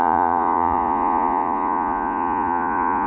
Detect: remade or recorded remade